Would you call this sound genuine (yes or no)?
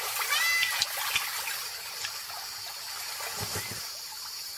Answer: yes